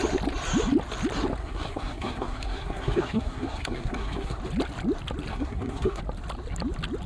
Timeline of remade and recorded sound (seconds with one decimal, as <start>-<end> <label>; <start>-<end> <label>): 0.0-1.4 recorded; 1.4-4.4 remade; 4.4-5.3 recorded; 5.3-6.0 remade; 6.0-7.1 recorded